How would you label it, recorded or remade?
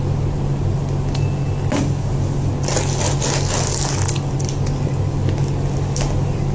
recorded